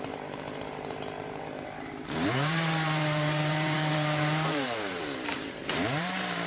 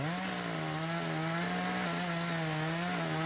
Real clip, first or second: second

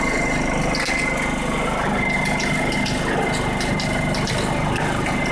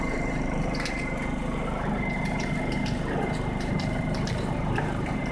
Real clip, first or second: first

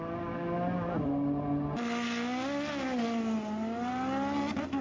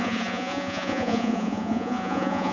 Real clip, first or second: first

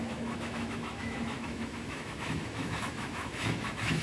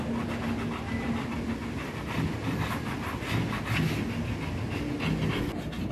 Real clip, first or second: second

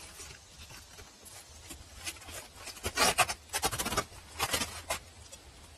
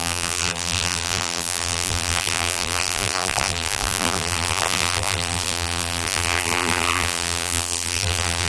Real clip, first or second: first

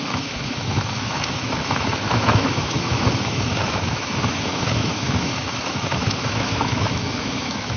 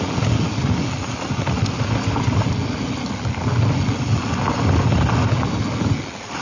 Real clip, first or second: second